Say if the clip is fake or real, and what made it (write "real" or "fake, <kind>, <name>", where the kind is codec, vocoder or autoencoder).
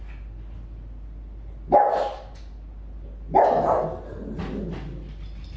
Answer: real